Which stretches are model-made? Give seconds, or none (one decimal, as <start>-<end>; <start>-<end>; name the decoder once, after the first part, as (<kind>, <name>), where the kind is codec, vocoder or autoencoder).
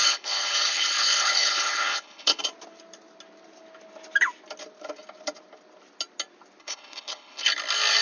0.0-2.4 (codec, HILCodec); 6.6-7.5